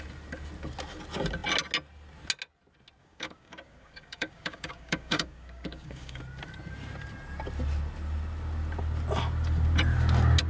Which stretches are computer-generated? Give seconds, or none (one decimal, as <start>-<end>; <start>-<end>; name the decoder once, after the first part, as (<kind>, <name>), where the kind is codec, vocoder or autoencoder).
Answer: 3.0-6.2 (codec, DAC)